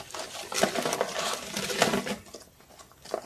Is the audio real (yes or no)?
yes